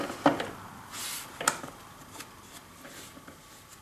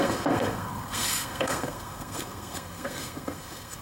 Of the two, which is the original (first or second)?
first